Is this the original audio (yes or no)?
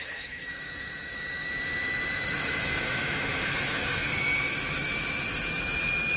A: no